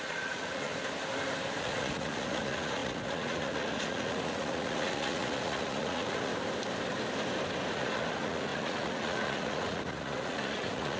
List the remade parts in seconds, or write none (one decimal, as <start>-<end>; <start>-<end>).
0.0-0.7; 1.6-6.3; 7.7-11.0